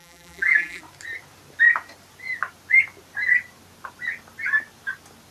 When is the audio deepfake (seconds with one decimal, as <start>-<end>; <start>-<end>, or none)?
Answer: 0.0-0.8